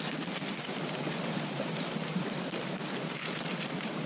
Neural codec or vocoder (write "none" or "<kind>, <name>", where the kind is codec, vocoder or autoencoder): vocoder, BigVGAN v2